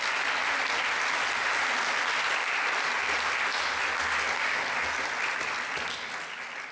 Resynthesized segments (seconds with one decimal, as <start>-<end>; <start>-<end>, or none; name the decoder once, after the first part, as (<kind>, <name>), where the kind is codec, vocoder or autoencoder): none